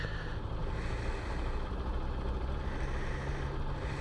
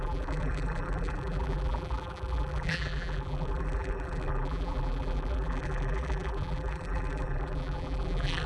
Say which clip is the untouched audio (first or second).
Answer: first